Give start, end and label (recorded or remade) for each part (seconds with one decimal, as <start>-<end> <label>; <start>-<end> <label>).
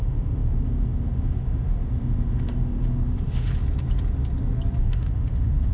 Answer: 0.0-3.5 remade; 3.5-4.8 recorded; 4.8-5.7 remade